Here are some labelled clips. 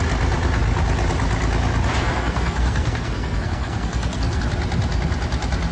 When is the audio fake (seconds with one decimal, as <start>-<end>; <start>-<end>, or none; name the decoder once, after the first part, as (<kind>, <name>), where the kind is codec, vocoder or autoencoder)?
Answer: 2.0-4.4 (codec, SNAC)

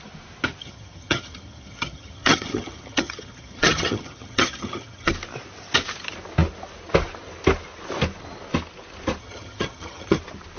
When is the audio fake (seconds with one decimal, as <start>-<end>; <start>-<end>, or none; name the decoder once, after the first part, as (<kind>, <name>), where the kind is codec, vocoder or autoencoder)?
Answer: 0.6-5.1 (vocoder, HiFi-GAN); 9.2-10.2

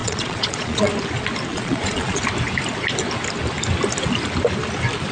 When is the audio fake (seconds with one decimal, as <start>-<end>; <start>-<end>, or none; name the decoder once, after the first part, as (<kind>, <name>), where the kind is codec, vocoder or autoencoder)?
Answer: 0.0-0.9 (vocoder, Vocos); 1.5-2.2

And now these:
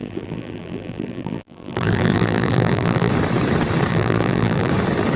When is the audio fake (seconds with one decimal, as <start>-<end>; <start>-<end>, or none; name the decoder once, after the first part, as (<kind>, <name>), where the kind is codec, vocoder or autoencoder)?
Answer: 0.0-3.1 (vocoder, BigVGAN v2); 3.9-4.7

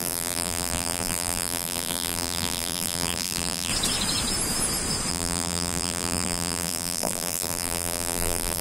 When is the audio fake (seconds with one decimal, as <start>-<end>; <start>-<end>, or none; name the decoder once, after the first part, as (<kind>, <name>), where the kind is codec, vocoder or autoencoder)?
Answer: 0.0-3.7 (vocoder, BigVGAN v2); 5.1-8.6

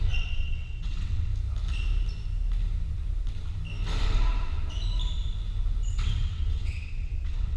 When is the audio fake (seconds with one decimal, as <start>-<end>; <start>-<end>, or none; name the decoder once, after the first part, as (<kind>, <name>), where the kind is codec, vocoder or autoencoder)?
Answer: 0.0-1.3 (vocoder, WaveNeXt); 5.9-7.6